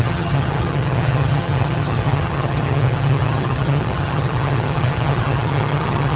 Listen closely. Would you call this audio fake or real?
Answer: fake